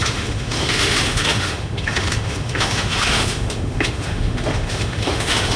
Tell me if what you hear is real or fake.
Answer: fake